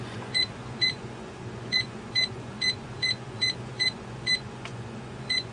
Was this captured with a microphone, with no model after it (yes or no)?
no